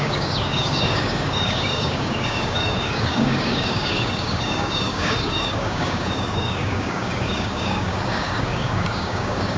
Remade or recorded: remade